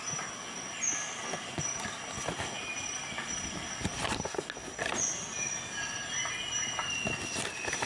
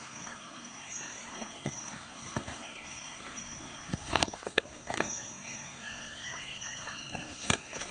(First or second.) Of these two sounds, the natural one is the first